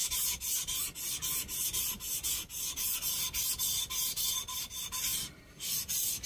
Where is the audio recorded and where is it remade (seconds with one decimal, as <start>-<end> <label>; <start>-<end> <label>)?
0.0-6.3 recorded

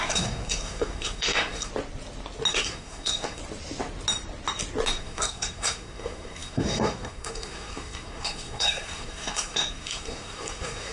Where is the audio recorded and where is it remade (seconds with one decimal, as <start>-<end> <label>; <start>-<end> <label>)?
0.0-1.7 remade; 1.7-2.5 recorded; 2.5-3.4 remade; 3.4-4.9 recorded; 4.9-10.9 remade

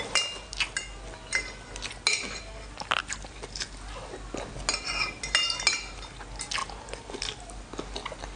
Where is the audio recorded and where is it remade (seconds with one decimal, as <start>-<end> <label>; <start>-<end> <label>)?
0.0-8.4 recorded

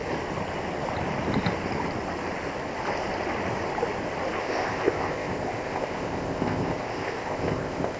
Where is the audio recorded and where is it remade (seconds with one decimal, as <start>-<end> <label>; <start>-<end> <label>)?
0.0-4.4 recorded; 4.4-8.0 remade

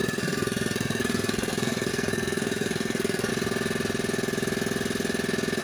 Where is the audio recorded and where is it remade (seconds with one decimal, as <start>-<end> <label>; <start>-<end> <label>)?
0.0-3.3 remade; 3.3-5.6 recorded

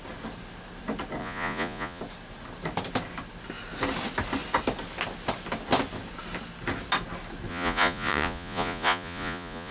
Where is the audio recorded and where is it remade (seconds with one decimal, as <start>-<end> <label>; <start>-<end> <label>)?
0.0-1.2 recorded; 1.2-2.0 remade; 2.0-7.5 recorded; 7.5-9.7 remade

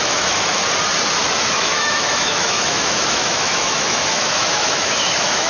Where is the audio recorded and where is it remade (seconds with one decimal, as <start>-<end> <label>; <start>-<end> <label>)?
0.0-0.6 remade; 0.6-1.3 recorded; 1.3-5.5 remade